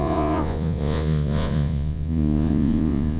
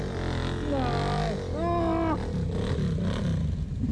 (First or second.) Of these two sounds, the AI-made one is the first